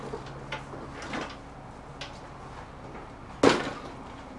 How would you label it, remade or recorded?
recorded